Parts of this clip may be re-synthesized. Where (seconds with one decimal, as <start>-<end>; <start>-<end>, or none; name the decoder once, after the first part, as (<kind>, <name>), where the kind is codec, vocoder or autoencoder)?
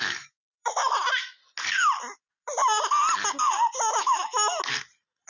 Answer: 0.0-1.4 (autoencoder, DAC-VAE); 3.9-4.5